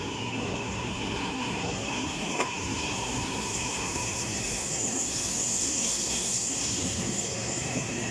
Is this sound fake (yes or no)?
yes